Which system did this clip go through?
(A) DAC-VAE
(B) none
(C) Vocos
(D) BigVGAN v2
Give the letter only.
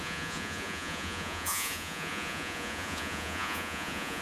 C